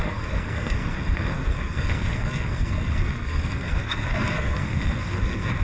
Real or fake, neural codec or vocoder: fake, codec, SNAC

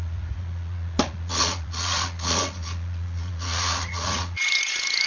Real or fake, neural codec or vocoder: fake, vocoder, Vocos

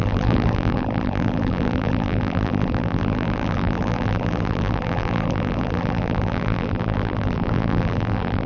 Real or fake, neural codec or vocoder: fake, vocoder, BigVGAN v2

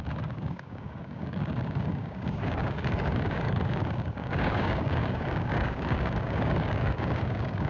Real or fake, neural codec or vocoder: fake, codec, DAC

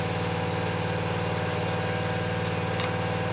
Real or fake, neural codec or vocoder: real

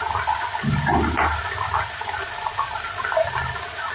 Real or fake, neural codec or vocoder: real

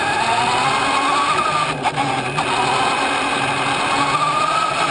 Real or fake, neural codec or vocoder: real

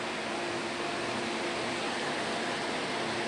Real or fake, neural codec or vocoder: real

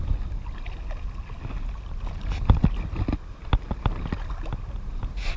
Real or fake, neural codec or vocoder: real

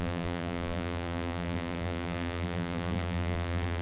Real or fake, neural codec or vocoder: fake, vocoder, BigVGAN v2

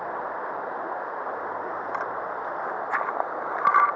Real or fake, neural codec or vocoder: real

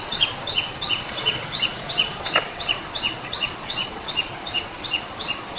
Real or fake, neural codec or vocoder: fake, vocoder, Vocos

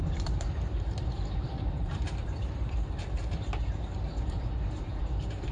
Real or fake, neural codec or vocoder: fake, vocoder, BigVGAN v2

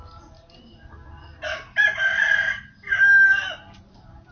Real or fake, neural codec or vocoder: real